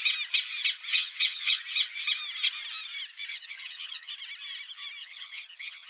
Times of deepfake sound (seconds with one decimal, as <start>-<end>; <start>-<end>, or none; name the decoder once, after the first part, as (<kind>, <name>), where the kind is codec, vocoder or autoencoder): 0.9-1.6 (vocoder, HiFi-GAN); 3.3-4.1; 5.0-5.9